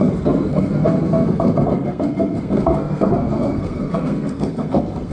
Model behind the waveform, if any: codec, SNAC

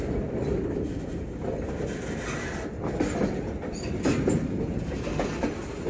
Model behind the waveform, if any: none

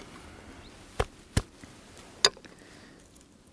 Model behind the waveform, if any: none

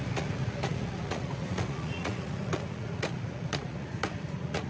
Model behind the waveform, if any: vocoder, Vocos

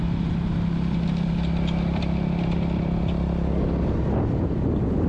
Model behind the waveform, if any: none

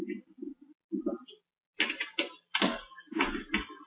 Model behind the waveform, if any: none